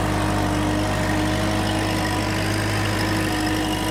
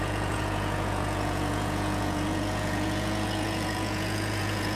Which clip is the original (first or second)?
first